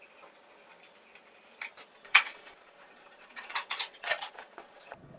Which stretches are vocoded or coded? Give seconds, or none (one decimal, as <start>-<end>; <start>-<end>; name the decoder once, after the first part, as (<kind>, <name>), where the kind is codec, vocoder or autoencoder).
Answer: 1.9-5.2 (vocoder, Vocos)